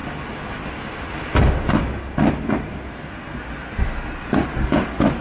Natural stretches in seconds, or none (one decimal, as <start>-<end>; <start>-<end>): 0.0-5.2